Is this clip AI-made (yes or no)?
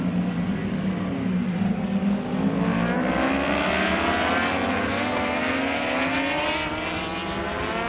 no